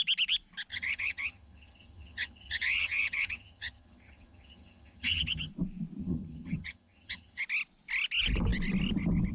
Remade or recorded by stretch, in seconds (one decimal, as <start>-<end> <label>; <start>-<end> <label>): 0.0-0.7 recorded; 0.7-5.5 remade; 5.5-6.0 recorded; 6.0-7.4 remade; 7.4-9.3 recorded